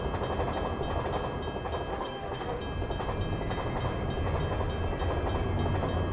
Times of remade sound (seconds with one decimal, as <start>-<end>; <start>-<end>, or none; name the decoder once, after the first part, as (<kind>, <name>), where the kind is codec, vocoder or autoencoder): 1.9-2.6 (autoencoder, DAC-VAE)